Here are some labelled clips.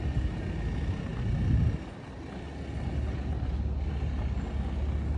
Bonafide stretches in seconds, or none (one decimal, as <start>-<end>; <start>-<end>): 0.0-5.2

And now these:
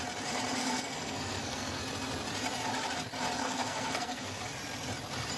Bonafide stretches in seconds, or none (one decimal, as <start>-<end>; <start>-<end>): 0.0-0.6; 1.8-3.4; 4.4-5.4

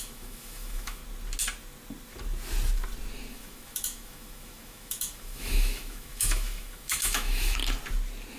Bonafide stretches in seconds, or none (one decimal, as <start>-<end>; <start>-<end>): 1.0-3.3; 7.6-8.4